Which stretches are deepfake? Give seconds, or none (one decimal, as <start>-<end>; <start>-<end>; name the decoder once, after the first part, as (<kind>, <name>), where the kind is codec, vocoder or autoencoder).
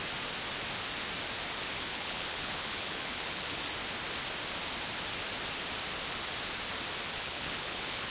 1.9-3.6 (codec, HILCodec); 7.2-8.1